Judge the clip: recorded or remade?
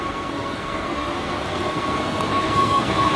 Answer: remade